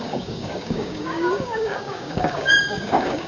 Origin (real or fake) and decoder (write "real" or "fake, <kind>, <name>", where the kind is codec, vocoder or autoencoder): fake, codec, DAC